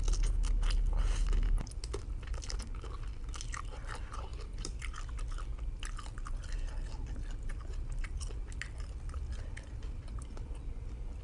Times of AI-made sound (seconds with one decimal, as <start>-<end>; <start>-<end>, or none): 4.3-4.8; 7.5-8.2